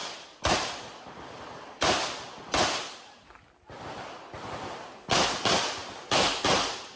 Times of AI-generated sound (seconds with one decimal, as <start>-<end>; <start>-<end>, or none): none